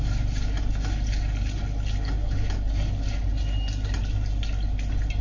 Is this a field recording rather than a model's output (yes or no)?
yes